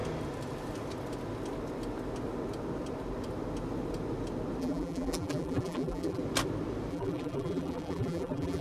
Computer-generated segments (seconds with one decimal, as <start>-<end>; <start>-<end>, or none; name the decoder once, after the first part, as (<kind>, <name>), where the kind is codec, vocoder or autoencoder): 4.6-6.2 (vocoder, BigVGAN v2); 6.9-8.6